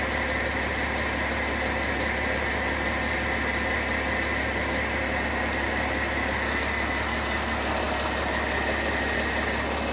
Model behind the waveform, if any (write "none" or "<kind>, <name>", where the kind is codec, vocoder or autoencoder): none